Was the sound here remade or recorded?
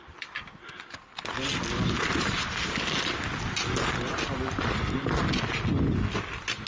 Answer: recorded